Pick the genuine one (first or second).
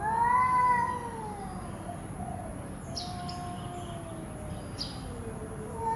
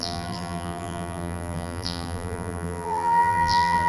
first